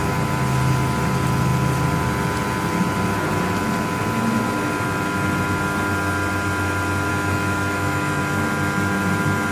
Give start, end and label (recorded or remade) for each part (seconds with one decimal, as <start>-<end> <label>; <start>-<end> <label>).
0.0-7.1 recorded; 7.1-8.2 remade; 8.2-9.5 recorded